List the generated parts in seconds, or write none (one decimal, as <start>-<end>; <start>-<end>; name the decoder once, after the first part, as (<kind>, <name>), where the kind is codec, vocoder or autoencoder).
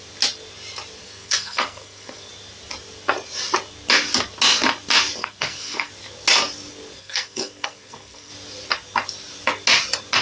1.0-2.3 (codec, SNAC); 5.2-5.9; 7.0-8.3